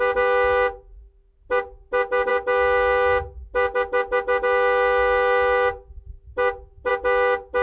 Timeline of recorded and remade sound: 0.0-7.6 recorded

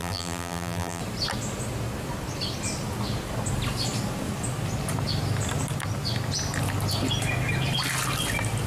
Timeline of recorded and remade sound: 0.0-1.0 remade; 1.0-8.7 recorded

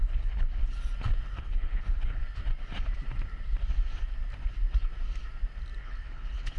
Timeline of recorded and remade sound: 0.0-0.6 remade; 0.6-1.4 recorded; 1.4-2.2 remade; 2.2-5.8 recorded; 5.8-6.6 remade

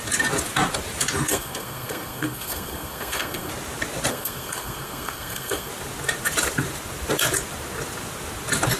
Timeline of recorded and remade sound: 0.0-1.3 recorded; 1.3-3.5 remade; 3.5-4.1 recorded; 4.1-5.7 remade; 5.7-8.8 recorded

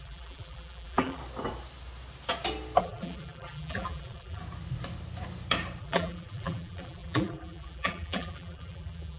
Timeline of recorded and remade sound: 0.0-1.2 remade; 1.2-2.8 recorded; 2.8-4.4 remade; 4.4-5.8 recorded; 5.8-9.2 remade

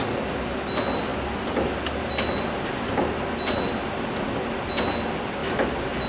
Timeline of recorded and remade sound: 0.0-6.1 recorded